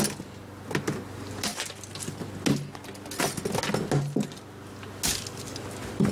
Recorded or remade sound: recorded